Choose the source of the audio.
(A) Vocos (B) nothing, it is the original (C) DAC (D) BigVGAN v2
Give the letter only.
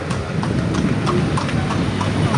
B